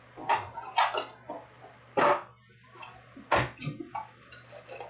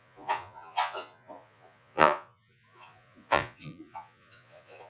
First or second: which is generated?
second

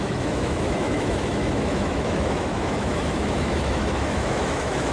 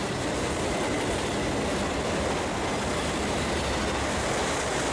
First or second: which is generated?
first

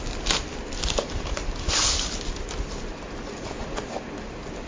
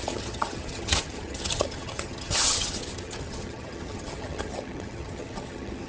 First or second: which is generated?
second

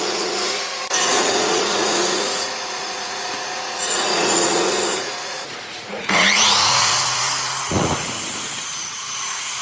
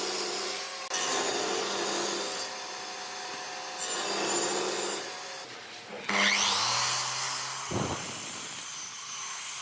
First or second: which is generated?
first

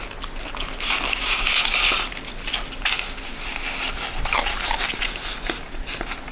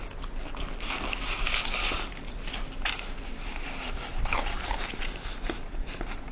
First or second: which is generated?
second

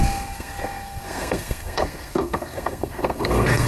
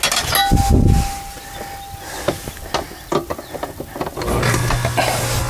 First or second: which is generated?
first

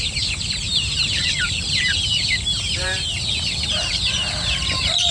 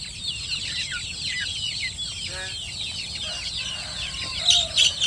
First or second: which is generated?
first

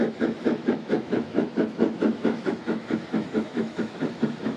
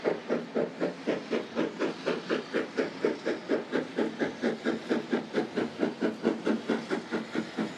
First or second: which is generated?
first